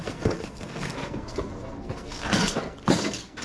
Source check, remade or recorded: remade